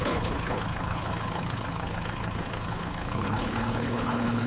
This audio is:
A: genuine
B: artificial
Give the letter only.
B